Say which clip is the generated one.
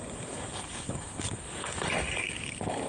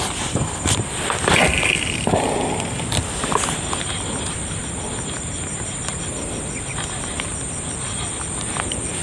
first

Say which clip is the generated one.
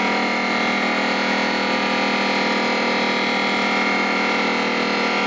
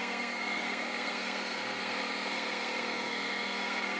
second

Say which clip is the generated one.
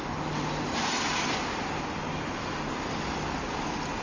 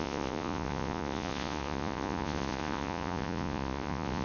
second